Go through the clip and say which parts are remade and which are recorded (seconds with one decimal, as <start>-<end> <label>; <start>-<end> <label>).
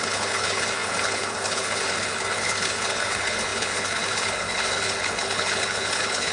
0.0-6.3 remade